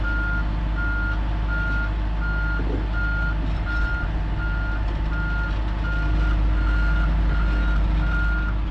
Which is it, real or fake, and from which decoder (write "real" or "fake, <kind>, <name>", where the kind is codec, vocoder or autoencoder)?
real